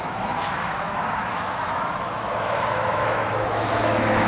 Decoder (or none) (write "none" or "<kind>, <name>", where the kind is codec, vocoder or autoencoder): autoencoder, DAC-VAE